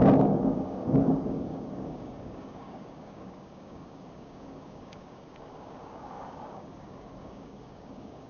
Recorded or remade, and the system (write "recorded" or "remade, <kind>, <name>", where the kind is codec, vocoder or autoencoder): remade, codec, DAC